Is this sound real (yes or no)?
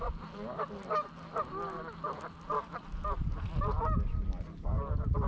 yes